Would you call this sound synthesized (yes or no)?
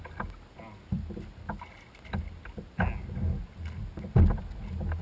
no